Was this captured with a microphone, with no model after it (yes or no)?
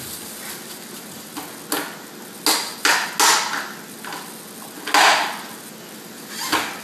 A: yes